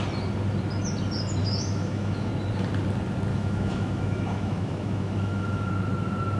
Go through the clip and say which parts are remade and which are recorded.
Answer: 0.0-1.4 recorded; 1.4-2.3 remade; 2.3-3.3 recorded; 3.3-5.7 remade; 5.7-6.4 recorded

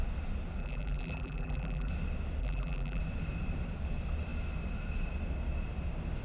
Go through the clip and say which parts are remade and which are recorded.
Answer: 0.0-0.6 recorded; 0.6-1.9 remade; 1.9-2.4 recorded; 2.4-3.0 remade; 3.0-6.2 recorded

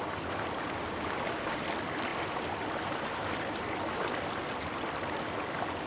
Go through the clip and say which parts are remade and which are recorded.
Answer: 0.0-0.8 recorded; 0.8-1.6 remade; 1.6-5.9 recorded

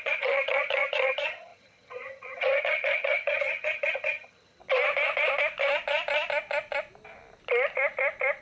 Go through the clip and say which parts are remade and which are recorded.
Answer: 0.0-4.6 remade; 4.6-8.4 recorded

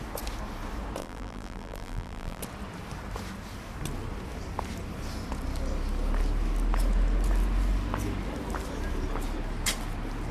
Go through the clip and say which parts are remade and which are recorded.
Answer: 0.0-1.0 recorded; 1.0-2.4 remade; 2.4-10.3 recorded

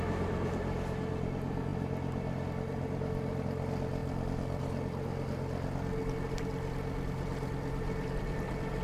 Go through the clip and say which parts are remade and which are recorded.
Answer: 0.0-8.8 recorded

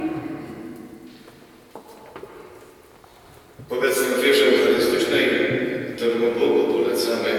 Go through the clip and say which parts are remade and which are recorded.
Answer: 0.0-7.4 recorded